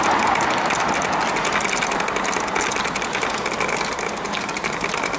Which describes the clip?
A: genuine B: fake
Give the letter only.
A